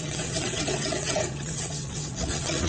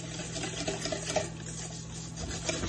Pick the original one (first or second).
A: second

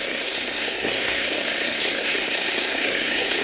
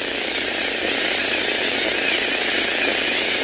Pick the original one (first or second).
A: second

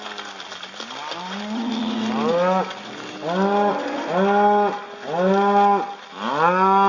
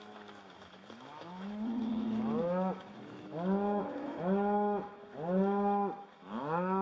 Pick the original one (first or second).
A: first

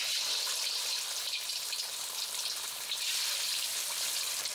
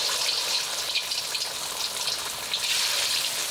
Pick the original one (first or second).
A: second